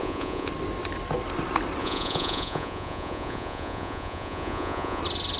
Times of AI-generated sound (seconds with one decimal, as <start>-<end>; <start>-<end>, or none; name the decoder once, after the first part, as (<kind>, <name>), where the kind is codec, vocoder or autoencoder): 0.0-0.5 (vocoder, Vocos); 1.8-5.0

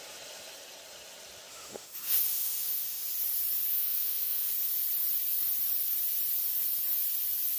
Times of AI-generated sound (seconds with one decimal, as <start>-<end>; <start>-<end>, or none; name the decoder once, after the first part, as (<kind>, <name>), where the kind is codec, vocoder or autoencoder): 1.5-3.0 (autoencoder, DAC-VAE); 3.7-4.5

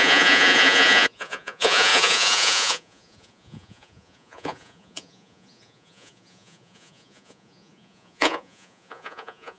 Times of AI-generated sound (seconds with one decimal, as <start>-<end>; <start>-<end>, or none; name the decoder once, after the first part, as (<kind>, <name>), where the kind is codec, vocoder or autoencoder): 0.0-9.6 (vocoder, Vocos)

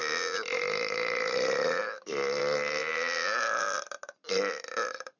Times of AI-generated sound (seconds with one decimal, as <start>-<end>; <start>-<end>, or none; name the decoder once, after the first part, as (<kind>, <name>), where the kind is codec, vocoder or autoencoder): none

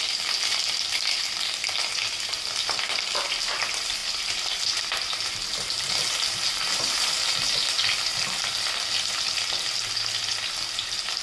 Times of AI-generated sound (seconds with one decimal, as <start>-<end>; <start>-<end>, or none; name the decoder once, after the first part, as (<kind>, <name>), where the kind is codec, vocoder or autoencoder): none